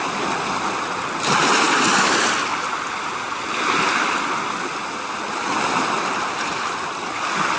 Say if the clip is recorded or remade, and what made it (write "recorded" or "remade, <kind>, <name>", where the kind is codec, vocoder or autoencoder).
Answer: recorded